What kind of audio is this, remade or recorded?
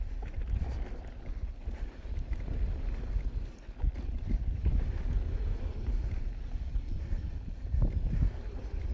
recorded